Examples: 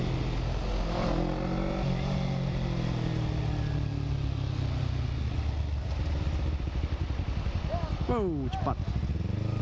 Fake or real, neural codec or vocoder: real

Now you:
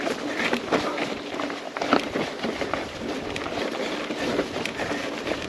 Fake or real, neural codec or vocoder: fake, vocoder, BigVGAN v2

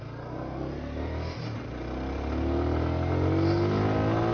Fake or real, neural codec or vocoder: real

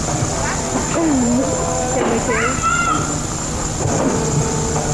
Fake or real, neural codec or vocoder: real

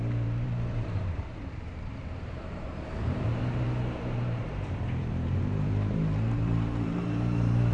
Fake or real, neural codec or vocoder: fake, vocoder, BigVGAN v2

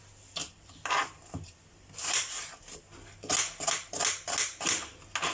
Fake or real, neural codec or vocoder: real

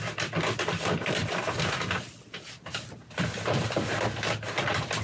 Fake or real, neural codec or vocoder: fake, vocoder, BigVGAN v2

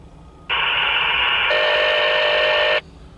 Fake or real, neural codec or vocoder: real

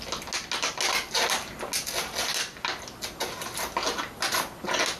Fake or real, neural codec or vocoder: real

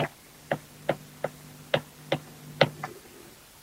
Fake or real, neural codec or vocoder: real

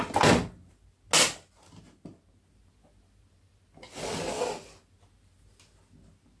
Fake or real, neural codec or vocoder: real